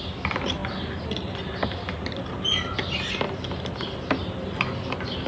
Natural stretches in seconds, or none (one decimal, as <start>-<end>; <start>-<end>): 0.0-5.3